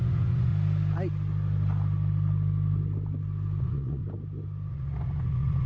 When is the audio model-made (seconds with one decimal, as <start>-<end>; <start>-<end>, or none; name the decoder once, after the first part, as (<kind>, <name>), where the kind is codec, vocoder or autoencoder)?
0.0-0.5 (vocoder, Vocos); 3.6-4.0; 4.7-5.7